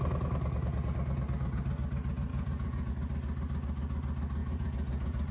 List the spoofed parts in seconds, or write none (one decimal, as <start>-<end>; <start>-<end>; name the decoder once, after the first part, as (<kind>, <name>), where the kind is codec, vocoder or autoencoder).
2.3-2.9 (vocoder, Vocos); 4.4-5.3